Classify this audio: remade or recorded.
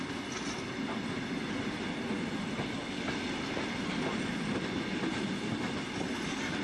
recorded